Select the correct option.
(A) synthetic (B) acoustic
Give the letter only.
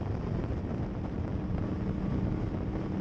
B